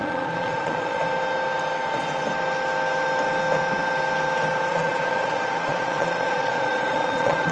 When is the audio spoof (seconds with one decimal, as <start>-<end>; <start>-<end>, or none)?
0.0-1.0; 4.7-7.5